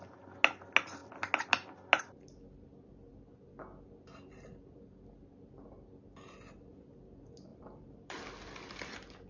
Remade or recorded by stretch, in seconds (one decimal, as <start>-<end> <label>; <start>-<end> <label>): 0.0-7.5 recorded; 7.5-8.2 remade; 8.2-9.3 recorded